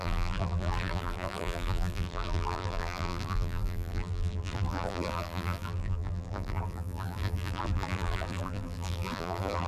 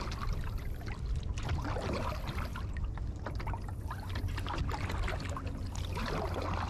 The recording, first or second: second